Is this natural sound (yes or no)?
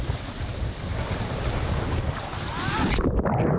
yes